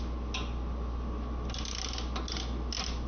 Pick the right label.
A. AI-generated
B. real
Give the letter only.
B